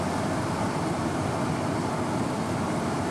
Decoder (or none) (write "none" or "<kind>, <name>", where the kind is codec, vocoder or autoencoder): none